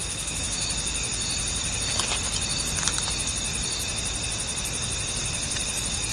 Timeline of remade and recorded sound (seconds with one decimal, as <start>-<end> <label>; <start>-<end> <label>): 0.0-0.7 remade; 0.7-6.1 recorded